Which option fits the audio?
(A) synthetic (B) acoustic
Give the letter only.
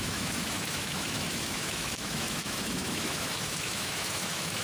A